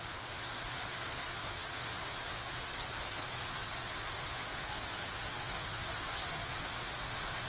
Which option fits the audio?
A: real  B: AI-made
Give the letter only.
B